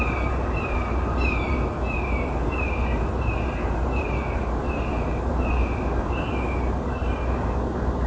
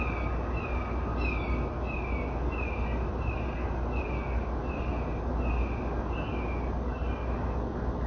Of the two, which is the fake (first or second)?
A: first